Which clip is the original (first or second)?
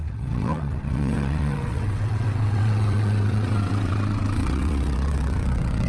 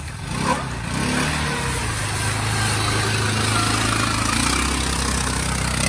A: second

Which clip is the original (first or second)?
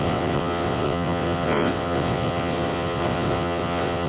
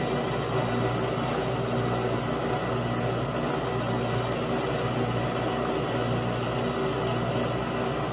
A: second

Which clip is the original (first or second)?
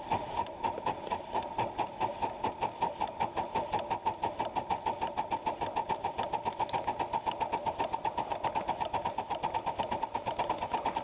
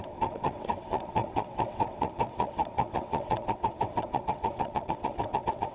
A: first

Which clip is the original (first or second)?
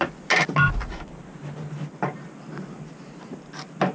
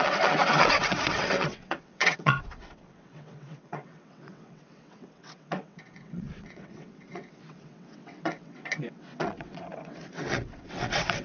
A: first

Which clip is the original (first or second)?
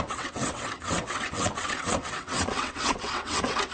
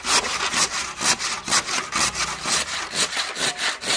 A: second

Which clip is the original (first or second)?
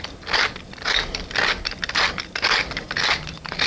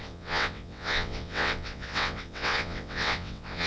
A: first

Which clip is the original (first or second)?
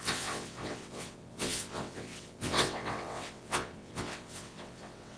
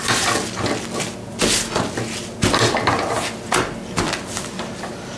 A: second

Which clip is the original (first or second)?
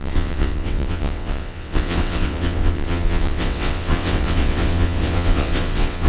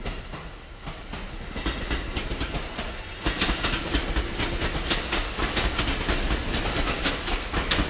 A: second